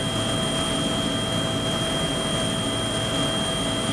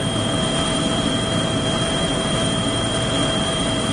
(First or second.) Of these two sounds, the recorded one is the first